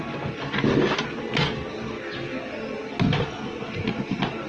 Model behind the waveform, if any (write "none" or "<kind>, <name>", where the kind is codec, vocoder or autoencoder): none